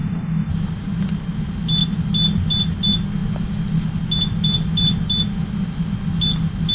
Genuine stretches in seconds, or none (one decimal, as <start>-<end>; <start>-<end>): 0.5-6.7